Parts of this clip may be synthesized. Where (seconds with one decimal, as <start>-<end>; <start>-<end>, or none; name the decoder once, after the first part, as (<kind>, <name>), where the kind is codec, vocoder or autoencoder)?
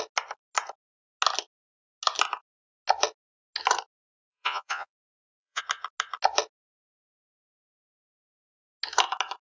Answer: 4.3-5.6 (vocoder, Vocos)